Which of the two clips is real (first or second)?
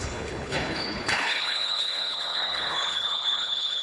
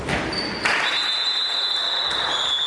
second